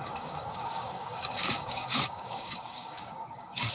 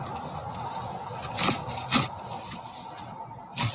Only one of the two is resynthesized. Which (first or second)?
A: first